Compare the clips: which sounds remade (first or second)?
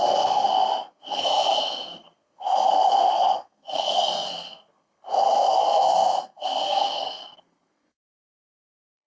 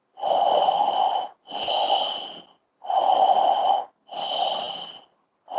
first